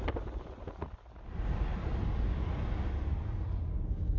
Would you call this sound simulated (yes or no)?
no